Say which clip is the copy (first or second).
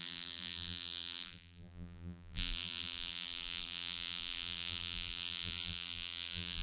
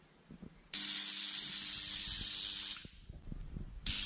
first